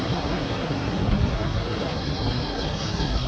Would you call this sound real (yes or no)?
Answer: no